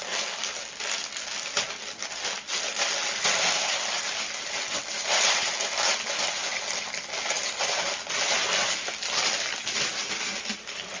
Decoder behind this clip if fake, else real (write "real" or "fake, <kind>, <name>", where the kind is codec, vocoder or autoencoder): real